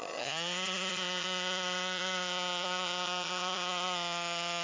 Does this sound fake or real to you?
fake